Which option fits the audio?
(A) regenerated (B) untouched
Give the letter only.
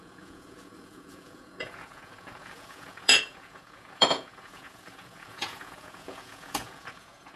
A